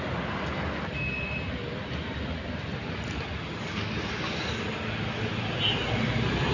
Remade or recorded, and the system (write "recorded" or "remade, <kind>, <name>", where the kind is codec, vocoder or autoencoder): recorded